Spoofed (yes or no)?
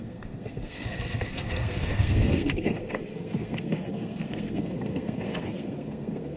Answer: yes